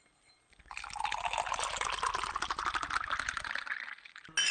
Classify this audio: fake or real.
real